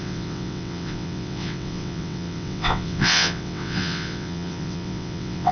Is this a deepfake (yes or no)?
yes